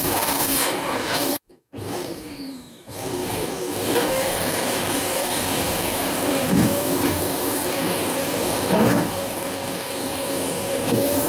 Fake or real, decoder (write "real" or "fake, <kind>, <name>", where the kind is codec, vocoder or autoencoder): fake, codec, DAC